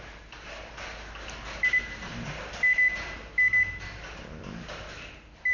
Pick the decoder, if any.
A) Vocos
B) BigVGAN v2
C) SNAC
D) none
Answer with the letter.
D